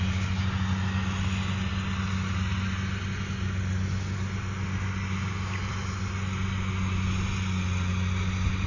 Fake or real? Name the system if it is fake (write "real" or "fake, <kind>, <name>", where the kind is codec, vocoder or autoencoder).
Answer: real